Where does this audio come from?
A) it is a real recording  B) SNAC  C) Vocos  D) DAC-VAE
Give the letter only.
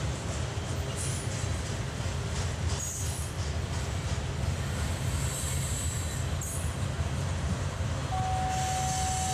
A